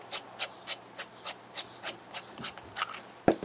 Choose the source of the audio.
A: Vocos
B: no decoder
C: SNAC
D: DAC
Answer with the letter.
B